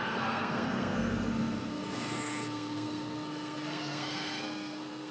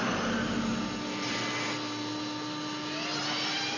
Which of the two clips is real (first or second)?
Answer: second